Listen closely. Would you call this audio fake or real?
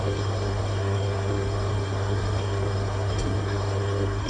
fake